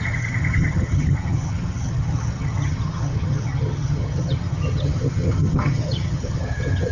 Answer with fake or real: fake